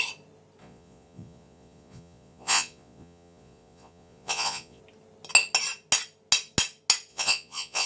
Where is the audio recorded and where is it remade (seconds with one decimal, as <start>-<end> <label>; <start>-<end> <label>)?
0.0-0.6 recorded; 0.6-4.8 remade; 4.8-7.1 recorded; 7.1-7.9 remade